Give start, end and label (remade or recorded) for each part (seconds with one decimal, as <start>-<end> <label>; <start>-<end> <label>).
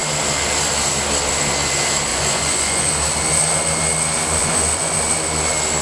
0.0-2.1 recorded; 2.1-2.9 remade; 2.9-4.4 recorded; 4.4-5.0 remade; 5.0-5.8 recorded